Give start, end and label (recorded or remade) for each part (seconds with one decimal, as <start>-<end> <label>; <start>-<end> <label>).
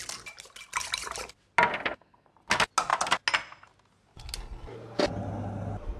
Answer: 0.0-1.7 recorded; 1.7-2.3 remade; 2.3-6.0 recorded